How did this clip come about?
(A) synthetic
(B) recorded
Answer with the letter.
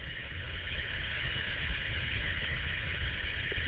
A